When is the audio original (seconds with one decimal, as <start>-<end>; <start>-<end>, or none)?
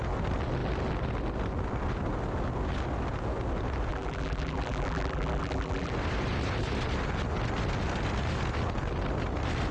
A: 0.0-3.9; 5.9-9.7